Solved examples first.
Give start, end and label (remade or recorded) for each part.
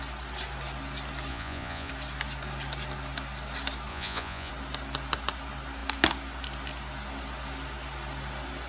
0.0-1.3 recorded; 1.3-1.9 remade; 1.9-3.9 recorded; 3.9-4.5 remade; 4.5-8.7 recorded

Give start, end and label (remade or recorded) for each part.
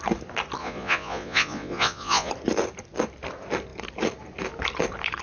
0.0-0.6 recorded; 0.6-2.3 remade; 2.3-5.2 recorded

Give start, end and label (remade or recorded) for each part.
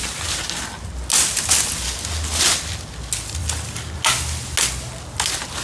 0.0-5.6 recorded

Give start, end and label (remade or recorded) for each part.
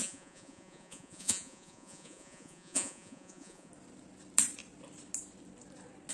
0.0-3.7 remade; 3.7-6.1 recorded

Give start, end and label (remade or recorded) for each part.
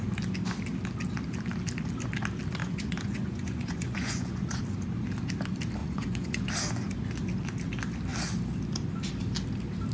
0.0-2.6 recorded; 2.6-4.6 remade; 4.6-5.8 recorded; 5.8-6.5 remade; 6.5-9.9 recorded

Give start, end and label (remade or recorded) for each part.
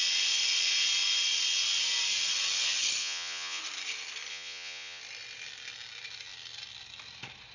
0.0-3.0 recorded; 3.0-3.6 remade; 3.6-4.3 recorded; 4.3-5.0 remade; 5.0-7.5 recorded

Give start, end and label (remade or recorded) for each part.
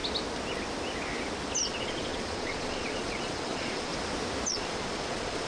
0.0-1.7 recorded; 1.7-3.9 remade; 3.9-4.5 recorded; 4.5-5.5 remade